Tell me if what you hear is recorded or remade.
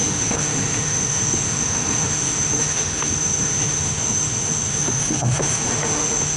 remade